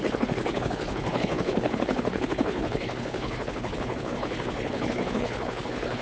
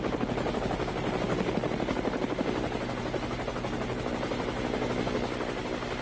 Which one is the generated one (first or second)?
first